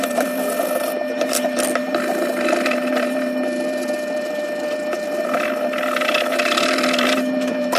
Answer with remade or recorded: remade